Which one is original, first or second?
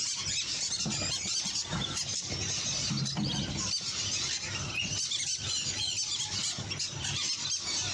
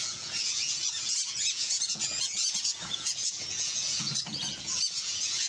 first